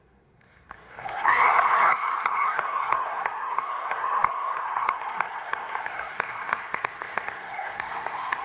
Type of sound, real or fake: fake